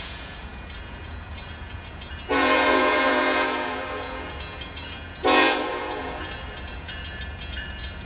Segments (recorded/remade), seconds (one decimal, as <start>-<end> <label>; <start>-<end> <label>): 0.0-8.1 remade